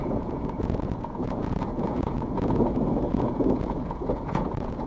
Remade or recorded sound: remade